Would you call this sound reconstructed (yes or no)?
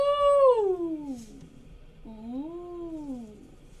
no